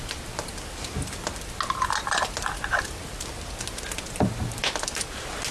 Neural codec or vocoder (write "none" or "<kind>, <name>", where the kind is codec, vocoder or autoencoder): none